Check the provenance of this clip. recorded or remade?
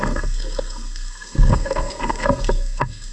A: remade